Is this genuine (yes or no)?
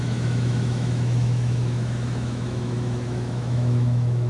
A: no